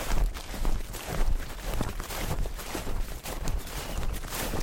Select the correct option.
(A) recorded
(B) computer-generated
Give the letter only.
B